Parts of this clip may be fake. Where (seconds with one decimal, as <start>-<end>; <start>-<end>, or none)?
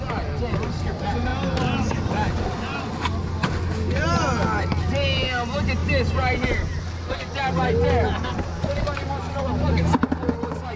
none